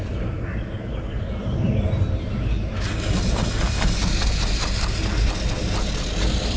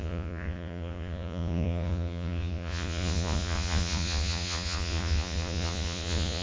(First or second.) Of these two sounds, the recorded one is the first